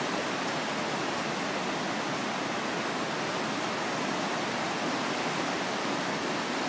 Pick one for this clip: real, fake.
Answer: real